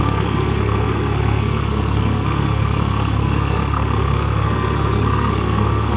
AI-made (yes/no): yes